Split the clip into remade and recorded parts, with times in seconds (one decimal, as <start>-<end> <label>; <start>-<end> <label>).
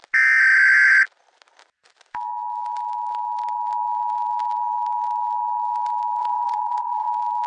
0.0-6.2 recorded; 6.2-7.1 remade; 7.1-7.5 recorded